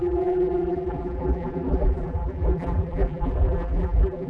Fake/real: fake